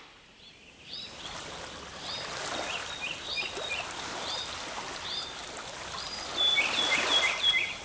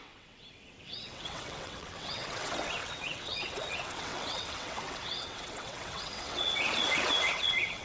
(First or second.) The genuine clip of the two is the first